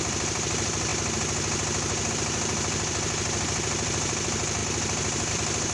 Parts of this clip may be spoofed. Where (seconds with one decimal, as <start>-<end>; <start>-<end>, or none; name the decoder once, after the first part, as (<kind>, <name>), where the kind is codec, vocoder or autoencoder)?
0.0-0.9 (vocoder, BigVGAN v2); 2.1-5.7